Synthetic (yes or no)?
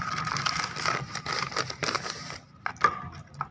no